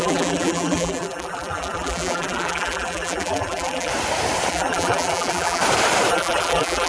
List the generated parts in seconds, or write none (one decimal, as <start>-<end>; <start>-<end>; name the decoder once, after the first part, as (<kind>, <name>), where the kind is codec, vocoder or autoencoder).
0.0-3.9 (vocoder, BigVGAN v2); 4.5-5.6; 6.1-6.9